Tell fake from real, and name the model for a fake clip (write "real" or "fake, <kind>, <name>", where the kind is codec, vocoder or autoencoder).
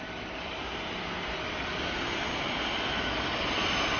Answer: real